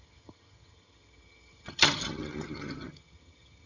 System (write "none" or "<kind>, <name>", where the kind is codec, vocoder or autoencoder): vocoder, HiFi-GAN